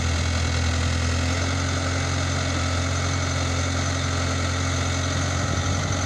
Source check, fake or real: real